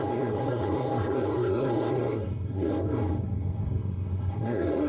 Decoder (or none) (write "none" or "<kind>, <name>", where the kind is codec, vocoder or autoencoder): codec, SNAC